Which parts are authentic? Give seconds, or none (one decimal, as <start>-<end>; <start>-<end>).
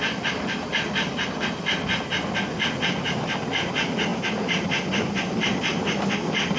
0.0-6.6